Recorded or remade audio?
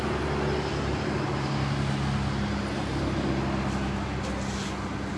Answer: recorded